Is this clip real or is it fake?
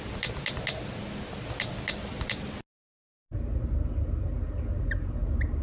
real